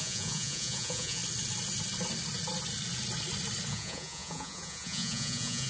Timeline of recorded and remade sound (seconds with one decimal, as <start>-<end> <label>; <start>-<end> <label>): 0.0-1.2 remade; 1.2-3.7 recorded; 3.7-5.7 remade